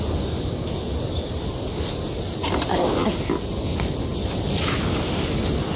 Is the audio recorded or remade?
recorded